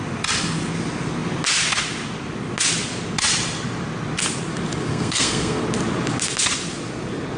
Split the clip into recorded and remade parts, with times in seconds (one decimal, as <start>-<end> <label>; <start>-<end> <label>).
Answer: 0.0-4.9 recorded; 4.9-5.6 remade; 5.6-7.4 recorded